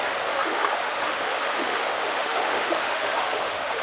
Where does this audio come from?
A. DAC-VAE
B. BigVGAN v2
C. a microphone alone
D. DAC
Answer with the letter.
A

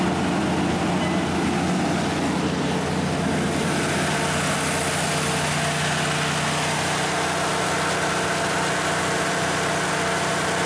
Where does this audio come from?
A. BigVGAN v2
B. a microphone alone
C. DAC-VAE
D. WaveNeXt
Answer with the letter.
B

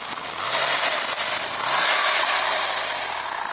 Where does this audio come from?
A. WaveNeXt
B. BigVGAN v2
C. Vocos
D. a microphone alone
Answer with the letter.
D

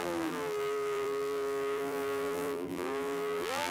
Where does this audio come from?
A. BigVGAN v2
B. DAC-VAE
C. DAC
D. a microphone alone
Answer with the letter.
A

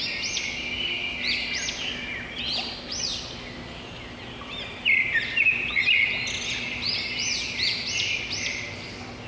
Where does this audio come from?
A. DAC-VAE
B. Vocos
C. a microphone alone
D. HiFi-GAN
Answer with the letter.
C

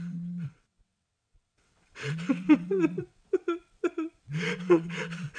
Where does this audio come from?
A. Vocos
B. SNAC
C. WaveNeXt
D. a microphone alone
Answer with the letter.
C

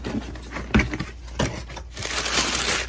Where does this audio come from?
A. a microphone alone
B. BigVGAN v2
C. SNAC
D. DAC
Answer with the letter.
A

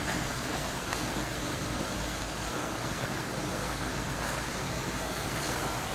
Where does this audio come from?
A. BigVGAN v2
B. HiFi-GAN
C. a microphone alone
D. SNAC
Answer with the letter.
D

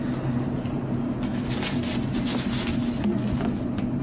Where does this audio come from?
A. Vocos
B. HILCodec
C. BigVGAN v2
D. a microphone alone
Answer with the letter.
D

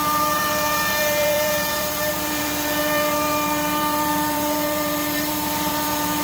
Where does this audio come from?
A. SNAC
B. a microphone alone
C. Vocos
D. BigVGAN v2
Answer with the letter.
D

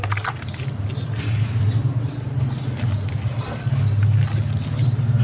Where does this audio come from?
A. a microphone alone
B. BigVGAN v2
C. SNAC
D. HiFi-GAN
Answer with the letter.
A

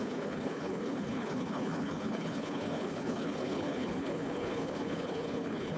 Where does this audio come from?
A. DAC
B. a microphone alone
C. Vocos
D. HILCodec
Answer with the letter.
D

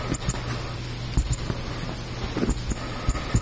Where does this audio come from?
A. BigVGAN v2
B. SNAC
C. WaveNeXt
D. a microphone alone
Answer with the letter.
D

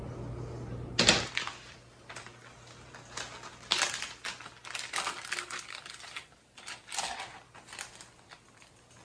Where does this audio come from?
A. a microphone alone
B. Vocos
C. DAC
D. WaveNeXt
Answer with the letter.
A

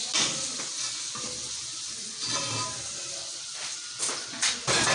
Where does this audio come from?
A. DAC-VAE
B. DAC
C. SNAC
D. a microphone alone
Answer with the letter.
D